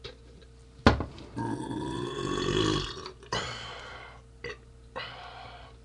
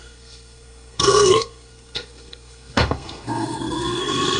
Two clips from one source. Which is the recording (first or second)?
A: first